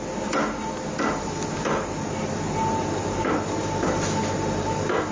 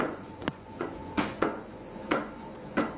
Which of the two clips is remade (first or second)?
second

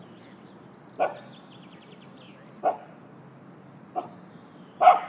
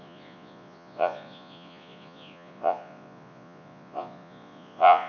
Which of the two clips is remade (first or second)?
second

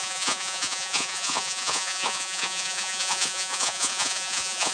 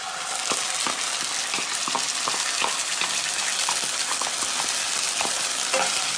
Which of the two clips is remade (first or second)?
first